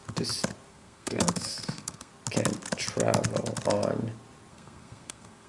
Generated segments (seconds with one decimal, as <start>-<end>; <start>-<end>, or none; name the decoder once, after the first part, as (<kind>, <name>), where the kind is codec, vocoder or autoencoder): 0.7-2.1 (codec, SNAC); 4.5-5.5